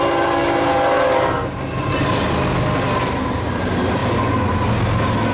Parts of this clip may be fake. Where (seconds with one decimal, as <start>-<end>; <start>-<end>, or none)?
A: none